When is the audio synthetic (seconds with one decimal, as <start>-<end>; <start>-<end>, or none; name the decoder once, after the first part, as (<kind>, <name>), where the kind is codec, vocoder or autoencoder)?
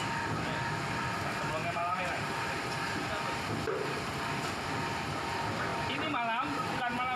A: 1.6-2.2 (vocoder, BigVGAN v2)